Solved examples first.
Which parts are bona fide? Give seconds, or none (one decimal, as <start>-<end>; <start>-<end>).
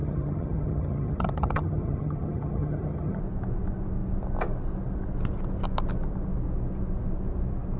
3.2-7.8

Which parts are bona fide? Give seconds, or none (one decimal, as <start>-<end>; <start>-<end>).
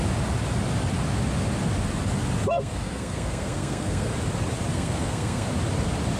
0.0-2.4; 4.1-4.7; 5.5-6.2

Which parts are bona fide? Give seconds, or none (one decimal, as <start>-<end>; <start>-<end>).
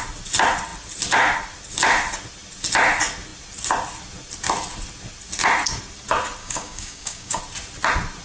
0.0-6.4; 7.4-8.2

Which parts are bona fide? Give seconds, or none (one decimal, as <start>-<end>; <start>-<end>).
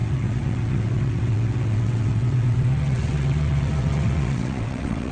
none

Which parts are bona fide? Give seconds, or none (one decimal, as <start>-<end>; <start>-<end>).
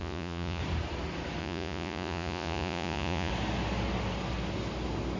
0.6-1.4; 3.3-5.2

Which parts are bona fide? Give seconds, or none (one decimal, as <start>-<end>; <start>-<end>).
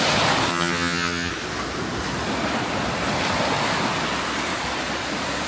0.0-0.5; 1.3-5.5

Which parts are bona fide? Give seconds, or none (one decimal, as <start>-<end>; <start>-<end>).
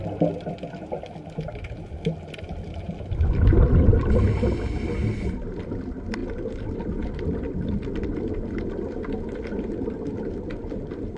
0.0-11.2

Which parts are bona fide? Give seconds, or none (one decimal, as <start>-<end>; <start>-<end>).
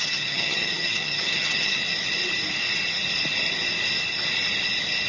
1.8-5.1